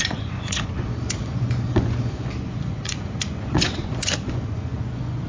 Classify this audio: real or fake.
fake